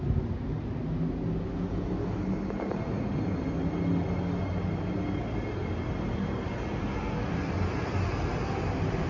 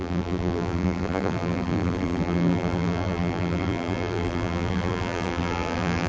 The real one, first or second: first